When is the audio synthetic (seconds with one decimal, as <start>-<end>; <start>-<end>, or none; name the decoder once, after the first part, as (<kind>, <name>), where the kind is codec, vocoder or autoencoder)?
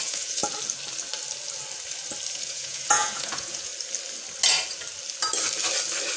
0.0-0.4 (vocoder, Vocos); 2.3-3.7